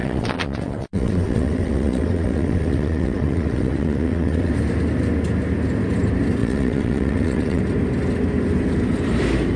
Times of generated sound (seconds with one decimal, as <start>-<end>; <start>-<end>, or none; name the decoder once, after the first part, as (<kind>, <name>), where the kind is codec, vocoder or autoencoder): 0.0-4.5 (vocoder, WaveNeXt); 6.4-7.6